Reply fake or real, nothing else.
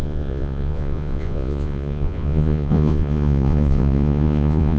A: fake